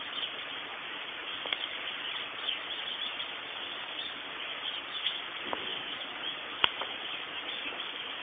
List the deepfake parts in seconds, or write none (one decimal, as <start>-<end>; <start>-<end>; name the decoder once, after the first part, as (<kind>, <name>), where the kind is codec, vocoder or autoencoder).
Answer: 0.7-1.4 (vocoder, Vocos); 5.7-6.9